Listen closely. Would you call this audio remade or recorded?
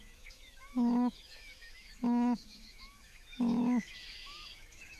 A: remade